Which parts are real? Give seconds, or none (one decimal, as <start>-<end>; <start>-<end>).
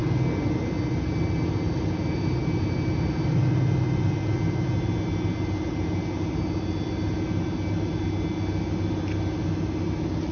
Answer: 0.0-10.3